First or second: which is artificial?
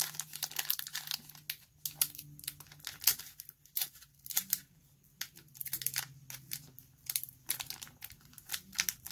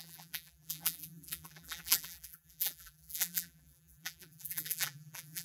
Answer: second